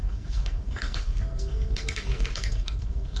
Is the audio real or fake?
fake